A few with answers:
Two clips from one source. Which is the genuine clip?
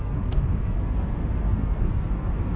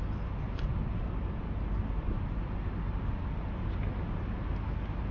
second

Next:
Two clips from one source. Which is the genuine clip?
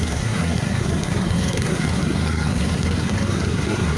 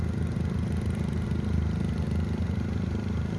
second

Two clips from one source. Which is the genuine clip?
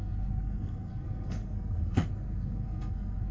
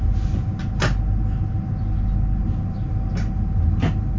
second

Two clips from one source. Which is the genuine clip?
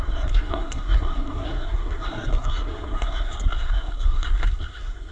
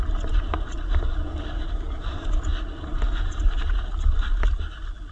second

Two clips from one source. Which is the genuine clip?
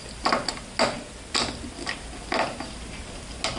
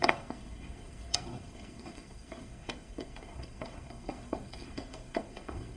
first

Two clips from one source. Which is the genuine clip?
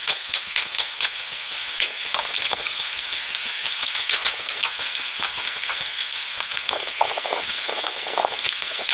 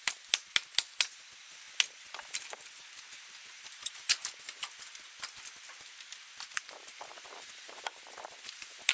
second